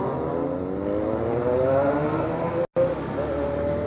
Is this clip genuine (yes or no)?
yes